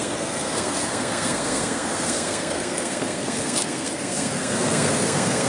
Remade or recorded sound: remade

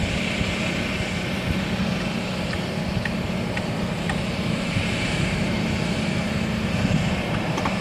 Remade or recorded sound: remade